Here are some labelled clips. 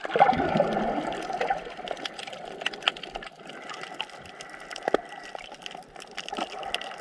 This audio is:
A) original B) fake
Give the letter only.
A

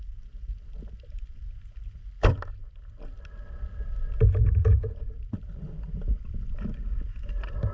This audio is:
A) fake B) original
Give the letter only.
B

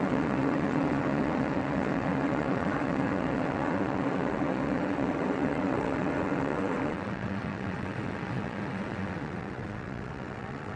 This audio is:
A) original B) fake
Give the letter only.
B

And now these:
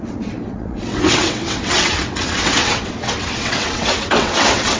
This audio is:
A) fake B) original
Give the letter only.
A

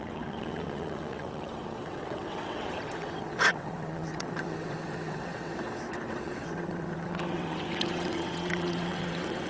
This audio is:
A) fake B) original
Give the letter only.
A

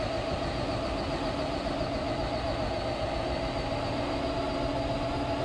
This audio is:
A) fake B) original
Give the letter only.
B